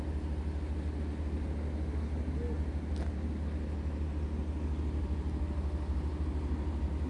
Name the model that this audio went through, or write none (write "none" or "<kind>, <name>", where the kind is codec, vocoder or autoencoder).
none